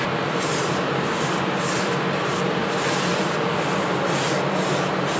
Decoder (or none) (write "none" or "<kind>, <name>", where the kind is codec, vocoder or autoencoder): vocoder, BigVGAN v2